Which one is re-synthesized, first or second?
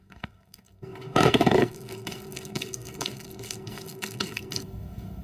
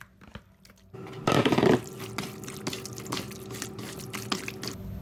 first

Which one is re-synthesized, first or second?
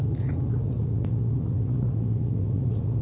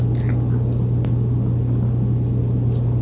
first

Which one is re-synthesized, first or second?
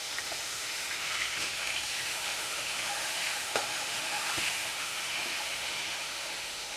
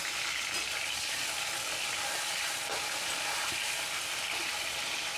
first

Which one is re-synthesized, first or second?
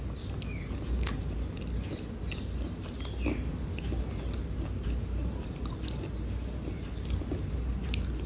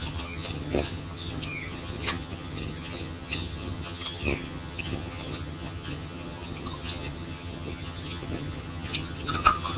second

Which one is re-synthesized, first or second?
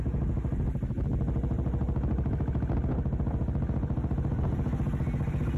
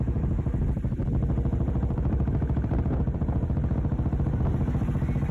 second